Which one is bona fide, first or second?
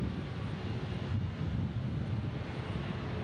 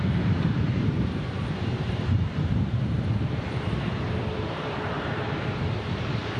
first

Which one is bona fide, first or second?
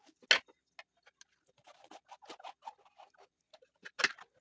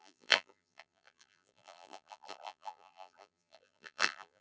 first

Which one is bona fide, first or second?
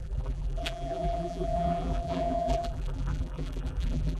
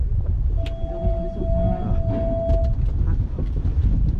second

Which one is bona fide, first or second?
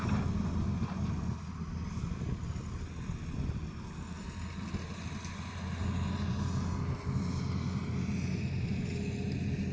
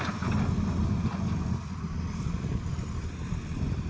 first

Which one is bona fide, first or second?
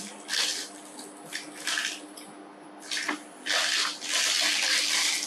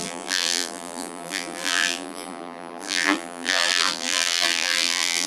first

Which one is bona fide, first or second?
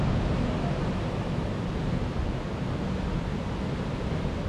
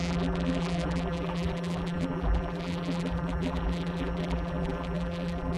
first